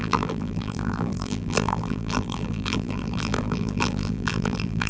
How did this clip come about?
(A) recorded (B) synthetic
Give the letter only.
B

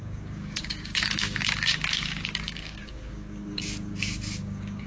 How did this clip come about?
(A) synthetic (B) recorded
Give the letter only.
A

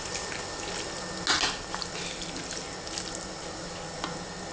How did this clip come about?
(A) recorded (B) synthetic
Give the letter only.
A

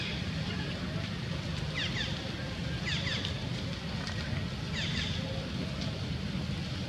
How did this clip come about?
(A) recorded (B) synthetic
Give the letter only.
A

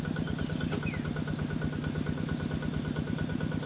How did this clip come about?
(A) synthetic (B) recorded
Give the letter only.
B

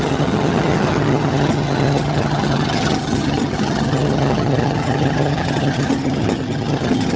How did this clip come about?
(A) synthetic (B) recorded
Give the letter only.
A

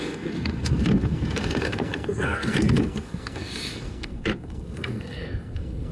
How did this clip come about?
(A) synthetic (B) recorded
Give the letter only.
A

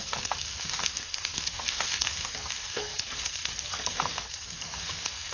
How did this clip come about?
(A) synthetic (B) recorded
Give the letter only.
A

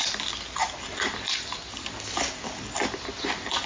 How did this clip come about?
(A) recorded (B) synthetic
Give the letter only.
A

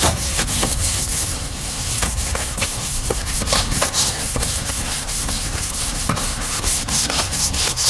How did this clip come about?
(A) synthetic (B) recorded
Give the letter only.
A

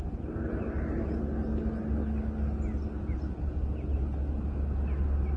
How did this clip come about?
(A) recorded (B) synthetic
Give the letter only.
A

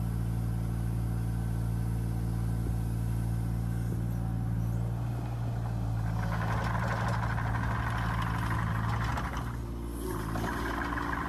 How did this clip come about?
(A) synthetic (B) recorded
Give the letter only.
B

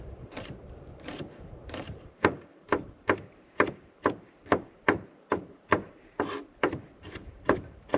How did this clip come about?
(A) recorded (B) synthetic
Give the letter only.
B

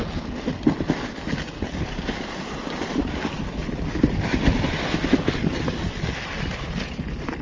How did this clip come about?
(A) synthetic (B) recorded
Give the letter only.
B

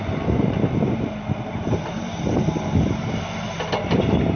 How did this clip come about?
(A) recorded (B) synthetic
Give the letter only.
B